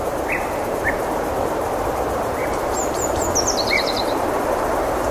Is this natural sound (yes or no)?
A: no